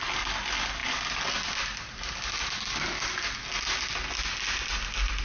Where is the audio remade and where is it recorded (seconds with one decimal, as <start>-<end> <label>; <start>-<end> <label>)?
0.0-5.2 recorded